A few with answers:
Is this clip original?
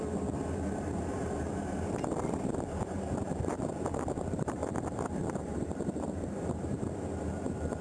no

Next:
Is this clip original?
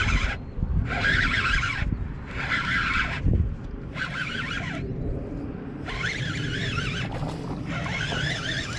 yes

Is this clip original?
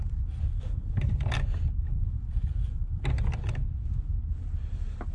yes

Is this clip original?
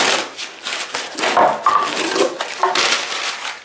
yes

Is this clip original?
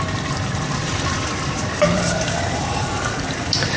no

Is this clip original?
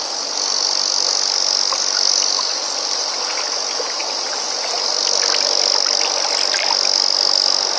yes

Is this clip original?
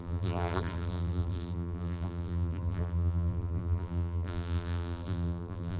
no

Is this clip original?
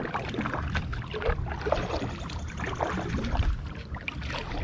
yes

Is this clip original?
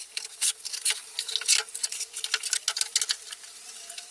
yes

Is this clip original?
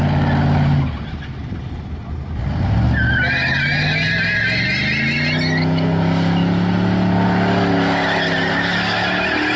yes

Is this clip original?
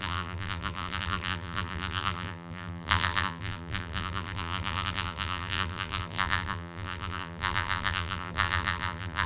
no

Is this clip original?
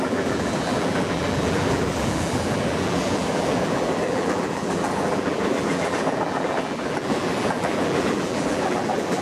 no